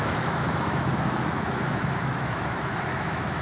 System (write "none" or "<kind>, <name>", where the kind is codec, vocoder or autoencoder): autoencoder, DAC-VAE